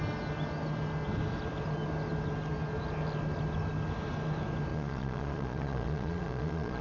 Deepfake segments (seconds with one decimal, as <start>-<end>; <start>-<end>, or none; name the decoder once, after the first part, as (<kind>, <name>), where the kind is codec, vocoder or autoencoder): 4.7-6.8 (vocoder, Vocos)